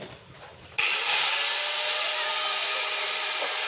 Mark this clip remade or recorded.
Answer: recorded